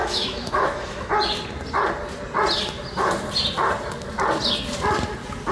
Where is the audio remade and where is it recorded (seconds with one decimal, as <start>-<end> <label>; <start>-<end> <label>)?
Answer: 0.0-1.1 remade; 1.1-5.5 recorded

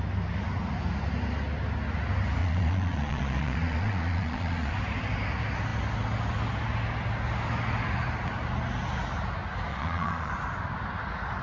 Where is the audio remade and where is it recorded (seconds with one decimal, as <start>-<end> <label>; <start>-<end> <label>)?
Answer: 0.0-2.4 recorded; 2.4-4.7 remade; 4.7-9.7 recorded; 9.7-10.3 remade; 10.3-11.4 recorded

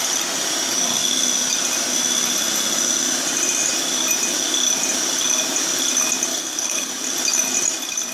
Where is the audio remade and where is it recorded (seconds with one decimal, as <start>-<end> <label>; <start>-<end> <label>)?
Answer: 0.0-6.3 recorded; 6.3-6.9 remade; 6.9-8.1 recorded

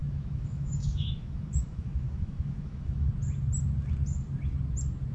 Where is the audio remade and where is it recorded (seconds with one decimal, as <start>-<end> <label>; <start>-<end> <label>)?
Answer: 0.0-3.1 remade; 3.1-5.1 recorded

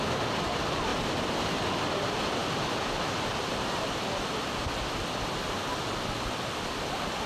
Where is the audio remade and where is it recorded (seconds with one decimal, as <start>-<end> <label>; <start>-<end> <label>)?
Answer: 0.0-7.3 recorded

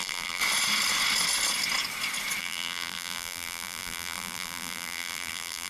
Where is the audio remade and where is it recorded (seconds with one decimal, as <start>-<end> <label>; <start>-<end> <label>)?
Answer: 0.0-0.4 remade; 0.4-2.4 recorded; 2.4-5.7 remade